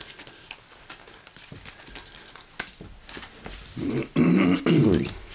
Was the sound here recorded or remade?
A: recorded